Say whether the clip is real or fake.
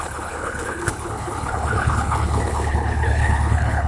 fake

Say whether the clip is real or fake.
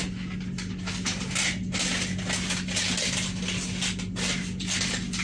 real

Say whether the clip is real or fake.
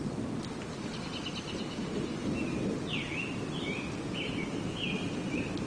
real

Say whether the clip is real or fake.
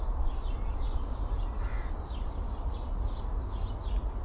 real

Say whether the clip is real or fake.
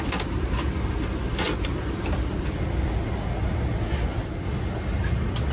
real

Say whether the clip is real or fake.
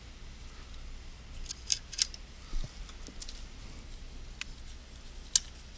real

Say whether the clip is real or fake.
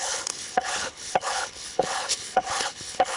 fake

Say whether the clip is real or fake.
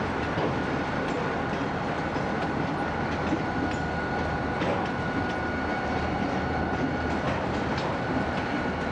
real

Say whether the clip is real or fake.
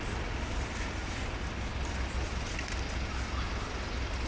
real